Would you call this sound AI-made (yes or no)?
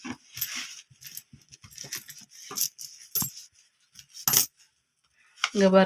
no